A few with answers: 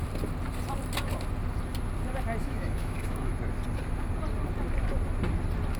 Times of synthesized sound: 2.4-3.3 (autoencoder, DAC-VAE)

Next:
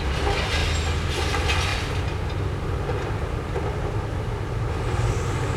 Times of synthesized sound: none

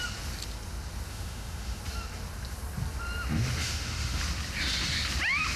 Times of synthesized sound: 1.1-1.8 (autoencoder, DAC-VAE); 3.6-4.2

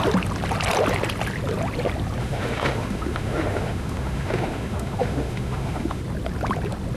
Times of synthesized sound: 2.2-6.0 (autoencoder, DAC-VAE)

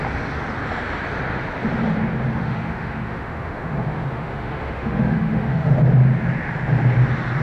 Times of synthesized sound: 2.4-5.7 (autoencoder, DAC-VAE)

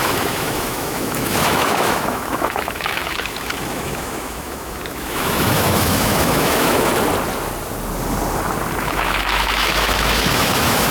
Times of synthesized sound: 0.0-6.9 (autoencoder, DAC-VAE); 8.8-10.9

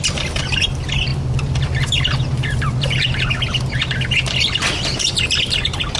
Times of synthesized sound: none

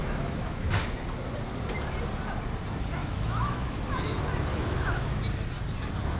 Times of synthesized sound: 0.0-0.7 (autoencoder, DAC-VAE); 3.0-3.8; 4.5-5.2